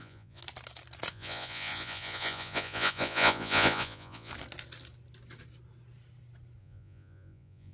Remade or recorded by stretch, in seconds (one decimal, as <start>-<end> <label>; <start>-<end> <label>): 0.0-0.4 remade; 0.4-1.1 recorded; 1.1-4.3 remade; 4.3-6.6 recorded; 6.6-7.7 remade